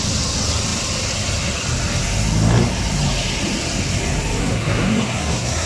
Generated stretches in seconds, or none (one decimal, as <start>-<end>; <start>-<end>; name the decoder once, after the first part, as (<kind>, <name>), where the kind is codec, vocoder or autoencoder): 4.4-5.7 (codec, SNAC)